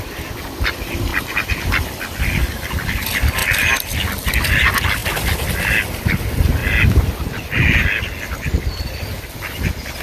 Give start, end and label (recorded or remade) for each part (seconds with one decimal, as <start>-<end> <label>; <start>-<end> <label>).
0.0-10.0 recorded